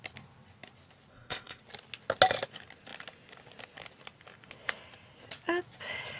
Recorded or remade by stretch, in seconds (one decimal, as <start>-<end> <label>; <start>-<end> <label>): 0.0-1.1 recorded; 1.1-1.6 remade; 1.6-6.2 recorded